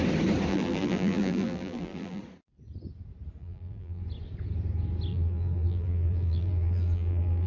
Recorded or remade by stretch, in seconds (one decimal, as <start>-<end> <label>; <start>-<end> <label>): 0.0-0.5 recorded; 0.5-2.2 remade; 2.2-3.4 recorded; 3.4-4.0 remade; 4.0-5.1 recorded; 5.1-7.5 remade